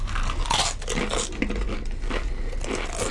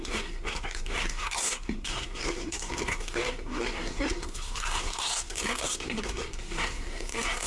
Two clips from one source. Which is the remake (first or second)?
second